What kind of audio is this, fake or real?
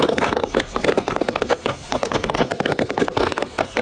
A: fake